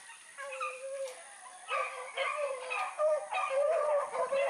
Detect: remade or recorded recorded